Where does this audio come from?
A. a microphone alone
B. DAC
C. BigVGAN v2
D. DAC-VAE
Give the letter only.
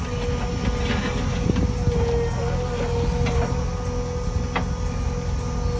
A